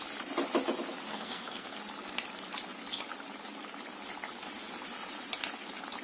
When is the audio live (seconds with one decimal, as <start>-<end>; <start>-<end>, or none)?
0.0-1.1; 1.8-6.0